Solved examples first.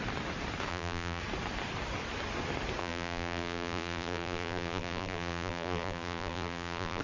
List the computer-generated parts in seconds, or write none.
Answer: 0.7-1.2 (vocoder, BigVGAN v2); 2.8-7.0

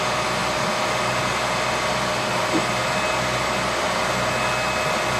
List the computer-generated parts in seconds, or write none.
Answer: none

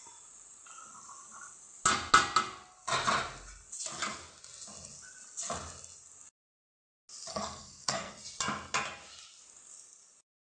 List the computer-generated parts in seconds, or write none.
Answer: 7.3-8.1 (codec, SNAC)

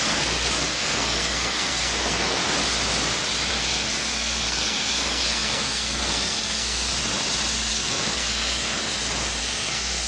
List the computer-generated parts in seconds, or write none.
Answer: 0.0-2.4 (codec, SNAC); 3.5-6.9; 7.7-8.8; 9.4-10.1

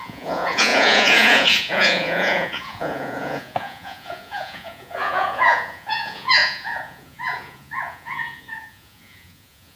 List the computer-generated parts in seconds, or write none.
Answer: 0.0-9.8 (vocoder, Vocos)

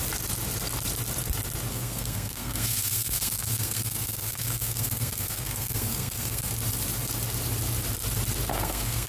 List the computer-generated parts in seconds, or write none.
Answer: 1.7-6.5 (codec, SNAC); 8.5-9.1

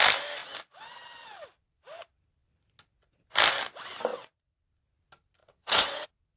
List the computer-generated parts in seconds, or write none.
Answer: 4.1-4.6 (vocoder, WaveNeXt); 5.4-6.4